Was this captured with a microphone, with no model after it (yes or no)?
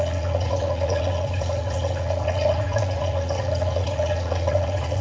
no